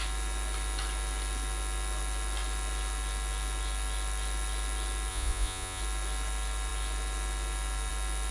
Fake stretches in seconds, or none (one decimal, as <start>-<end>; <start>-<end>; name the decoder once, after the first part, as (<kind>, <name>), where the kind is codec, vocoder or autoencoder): 5.1-5.8 (vocoder, Vocos)